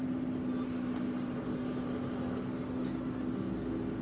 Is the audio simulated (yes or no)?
no